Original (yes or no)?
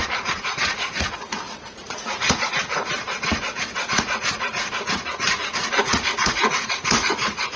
no